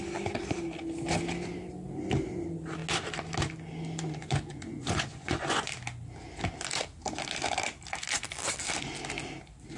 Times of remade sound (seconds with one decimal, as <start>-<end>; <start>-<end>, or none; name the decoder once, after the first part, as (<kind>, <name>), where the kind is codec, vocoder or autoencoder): 4.2-5.7 (vocoder, Vocos)

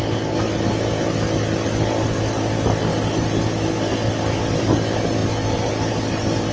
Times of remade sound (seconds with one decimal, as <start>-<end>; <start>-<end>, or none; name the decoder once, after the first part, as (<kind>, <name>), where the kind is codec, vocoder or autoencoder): none

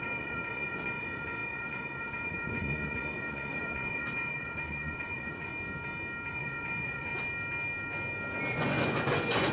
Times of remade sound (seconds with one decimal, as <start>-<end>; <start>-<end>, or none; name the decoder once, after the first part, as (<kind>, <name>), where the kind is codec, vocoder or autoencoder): 0.0-5.5 (vocoder, Vocos); 6.3-7.1; 8.5-9.5

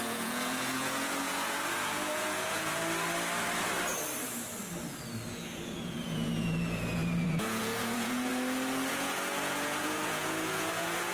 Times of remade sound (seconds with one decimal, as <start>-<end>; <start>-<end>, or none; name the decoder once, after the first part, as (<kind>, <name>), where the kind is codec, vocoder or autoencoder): 0.0-2.8 (vocoder, Vocos); 5.3-8.3; 8.9-11.1

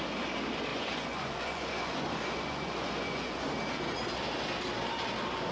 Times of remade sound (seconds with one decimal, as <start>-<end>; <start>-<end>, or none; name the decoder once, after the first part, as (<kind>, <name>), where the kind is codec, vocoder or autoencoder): 0.7-3.4 (vocoder, Vocos)